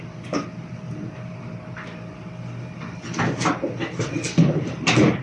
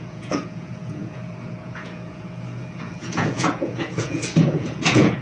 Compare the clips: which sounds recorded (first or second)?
first